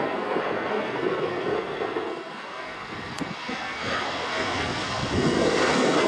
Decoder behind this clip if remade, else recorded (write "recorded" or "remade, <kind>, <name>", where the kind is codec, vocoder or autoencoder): remade, codec, SNAC